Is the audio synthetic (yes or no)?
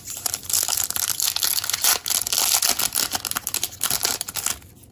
no